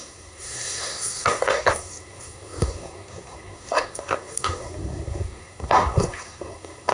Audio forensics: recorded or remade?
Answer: remade